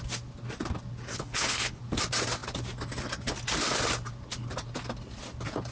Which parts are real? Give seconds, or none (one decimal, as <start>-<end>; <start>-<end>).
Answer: 0.0-1.1; 1.8-5.7